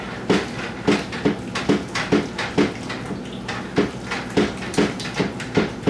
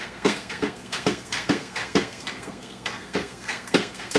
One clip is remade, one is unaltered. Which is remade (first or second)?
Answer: second